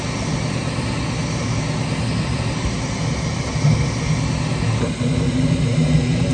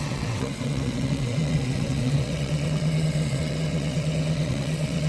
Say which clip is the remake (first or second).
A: second